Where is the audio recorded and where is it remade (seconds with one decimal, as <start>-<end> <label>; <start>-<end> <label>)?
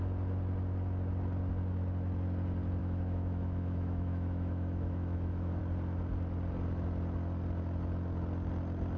0.0-2.8 recorded; 2.8-5.6 remade; 5.6-9.0 recorded